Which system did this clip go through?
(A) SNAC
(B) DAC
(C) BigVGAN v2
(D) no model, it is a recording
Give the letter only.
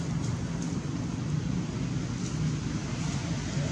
D